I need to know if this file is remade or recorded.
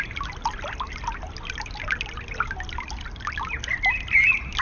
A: recorded